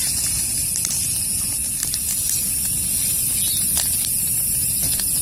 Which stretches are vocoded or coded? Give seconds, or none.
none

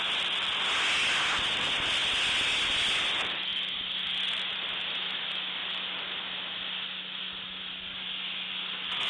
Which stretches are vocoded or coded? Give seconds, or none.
none

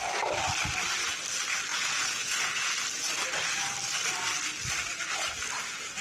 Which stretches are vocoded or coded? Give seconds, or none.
1.7-2.6 (vocoder, Vocos)